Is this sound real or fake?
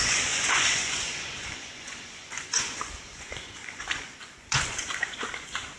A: fake